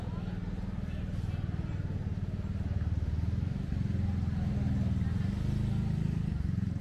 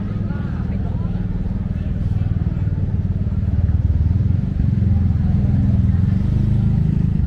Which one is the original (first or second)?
first